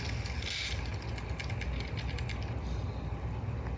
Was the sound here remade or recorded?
recorded